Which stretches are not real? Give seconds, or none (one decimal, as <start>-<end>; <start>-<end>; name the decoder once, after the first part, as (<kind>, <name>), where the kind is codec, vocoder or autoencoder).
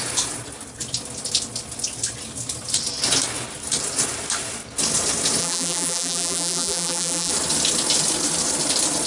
5.4-7.3 (vocoder, BigVGAN v2)